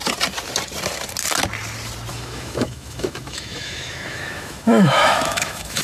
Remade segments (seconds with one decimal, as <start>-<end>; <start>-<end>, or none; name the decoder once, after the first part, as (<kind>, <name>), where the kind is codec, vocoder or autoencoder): 2.1-5.8 (autoencoder, DAC-VAE)